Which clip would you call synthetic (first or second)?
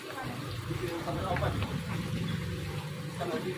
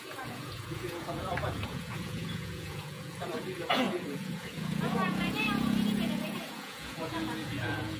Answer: second